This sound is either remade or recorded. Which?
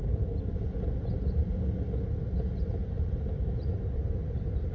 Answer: recorded